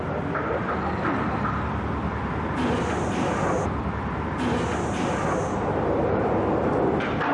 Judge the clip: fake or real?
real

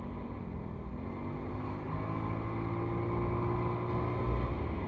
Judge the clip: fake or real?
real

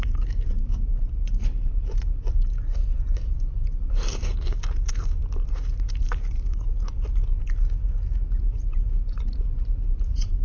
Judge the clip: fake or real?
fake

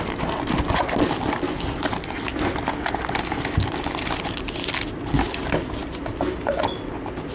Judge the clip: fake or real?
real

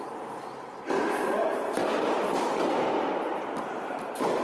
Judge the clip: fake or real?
real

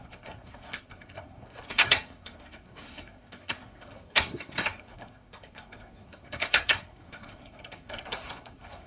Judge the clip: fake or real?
fake